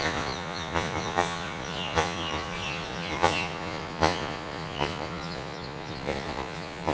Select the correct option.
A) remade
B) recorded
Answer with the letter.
A